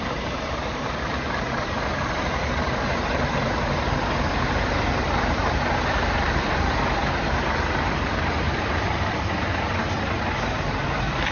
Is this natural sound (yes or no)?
no